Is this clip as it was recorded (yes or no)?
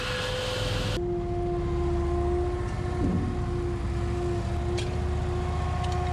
yes